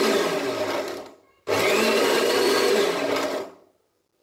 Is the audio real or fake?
real